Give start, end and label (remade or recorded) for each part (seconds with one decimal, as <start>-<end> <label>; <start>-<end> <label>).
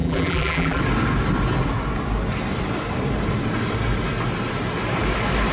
0.0-0.8 remade; 0.8-5.5 recorded